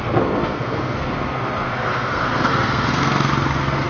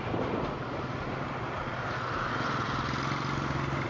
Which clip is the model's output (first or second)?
first